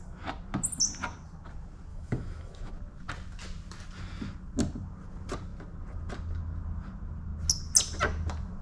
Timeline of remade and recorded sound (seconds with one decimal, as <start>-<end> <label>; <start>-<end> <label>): 0.0-1.9 recorded; 1.9-2.7 remade; 2.7-8.6 recorded